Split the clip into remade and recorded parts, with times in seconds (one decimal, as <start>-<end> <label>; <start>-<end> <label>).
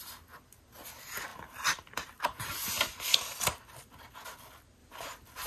0.0-4.8 recorded; 4.8-5.5 remade